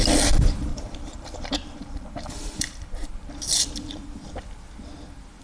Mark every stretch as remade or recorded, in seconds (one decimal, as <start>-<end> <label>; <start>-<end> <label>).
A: 0.0-0.7 recorded; 0.7-3.3 remade; 3.3-5.4 recorded